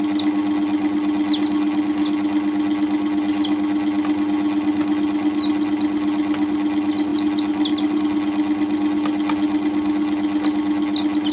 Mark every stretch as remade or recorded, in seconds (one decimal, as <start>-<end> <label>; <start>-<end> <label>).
0.0-11.3 recorded